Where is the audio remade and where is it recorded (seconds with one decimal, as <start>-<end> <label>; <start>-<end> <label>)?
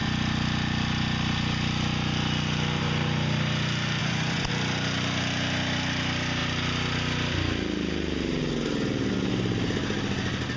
0.0-4.0 recorded; 4.0-4.5 remade; 4.5-10.6 recorded